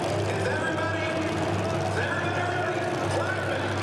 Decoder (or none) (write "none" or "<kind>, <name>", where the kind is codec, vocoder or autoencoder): none